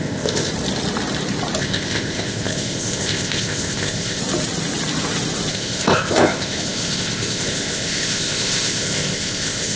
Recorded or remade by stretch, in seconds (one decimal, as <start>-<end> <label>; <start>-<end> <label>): 0.0-0.5 remade; 0.5-1.6 recorded; 1.6-4.2 remade; 4.2-5.5 recorded; 5.5-9.8 remade